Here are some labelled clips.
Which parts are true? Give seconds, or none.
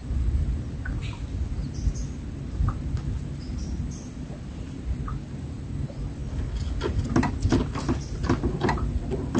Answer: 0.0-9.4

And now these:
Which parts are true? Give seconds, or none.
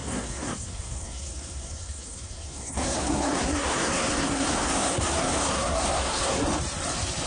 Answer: 6.4-7.3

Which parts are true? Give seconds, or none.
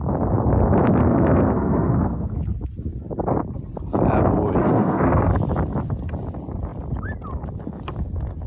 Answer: 0.0-1.0; 2.3-4.6; 5.3-8.5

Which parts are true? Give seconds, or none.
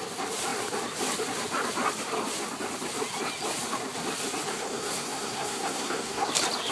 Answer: 0.0-4.5; 6.3-6.7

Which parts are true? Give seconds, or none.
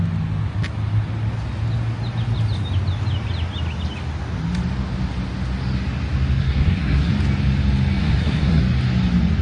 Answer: 0.0-6.4; 7.1-8.0; 8.6-9.4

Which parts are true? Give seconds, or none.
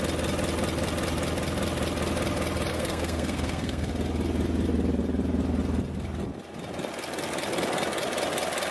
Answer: 0.0-2.7; 3.9-8.7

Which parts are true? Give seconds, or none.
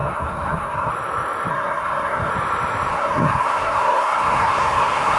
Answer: 0.9-1.5; 2.3-2.9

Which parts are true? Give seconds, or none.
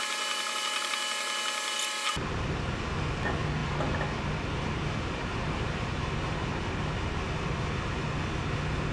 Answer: 0.0-8.9